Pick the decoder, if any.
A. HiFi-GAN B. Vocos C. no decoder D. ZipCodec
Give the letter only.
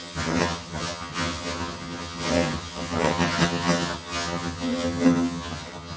A